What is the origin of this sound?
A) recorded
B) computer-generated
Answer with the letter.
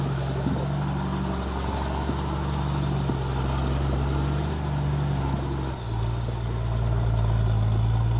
A